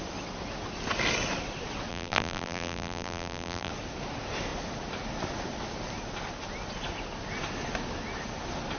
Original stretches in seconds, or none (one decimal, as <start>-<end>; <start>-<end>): 0.0-1.9; 3.7-8.8